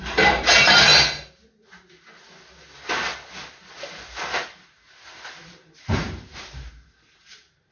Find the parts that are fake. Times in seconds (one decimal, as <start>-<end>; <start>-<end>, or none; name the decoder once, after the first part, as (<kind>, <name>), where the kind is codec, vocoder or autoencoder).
0.0-0.9 (vocoder, BigVGAN v2); 5.4-7.7